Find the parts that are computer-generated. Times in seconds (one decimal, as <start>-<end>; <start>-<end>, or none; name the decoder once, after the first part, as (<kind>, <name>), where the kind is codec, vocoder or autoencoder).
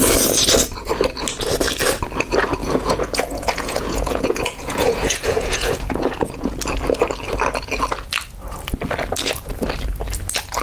2.6-6.5 (vocoder, Vocos)